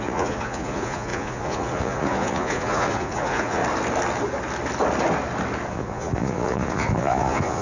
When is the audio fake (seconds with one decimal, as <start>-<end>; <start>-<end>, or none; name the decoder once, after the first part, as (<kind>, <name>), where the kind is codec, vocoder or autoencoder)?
0.0-3.6 (vocoder, Vocos); 5.7-7.6